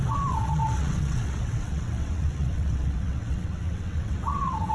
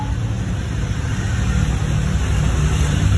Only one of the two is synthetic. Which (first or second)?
first